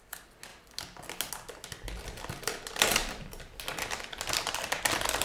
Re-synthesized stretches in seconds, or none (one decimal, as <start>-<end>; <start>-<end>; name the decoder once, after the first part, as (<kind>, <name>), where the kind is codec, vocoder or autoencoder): 3.0-3.6 (vocoder, BigVGAN v2)